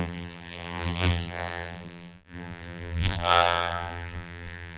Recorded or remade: remade